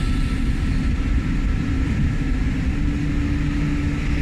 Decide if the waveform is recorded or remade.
recorded